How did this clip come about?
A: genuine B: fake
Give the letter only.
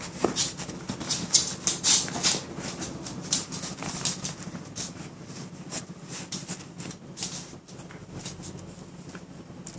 A